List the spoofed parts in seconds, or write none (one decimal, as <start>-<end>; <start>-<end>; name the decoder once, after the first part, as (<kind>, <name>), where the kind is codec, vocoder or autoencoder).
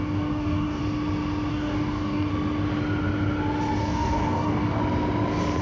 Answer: 0.0-0.8 (codec, DAC); 1.5-2.3; 3.8-4.8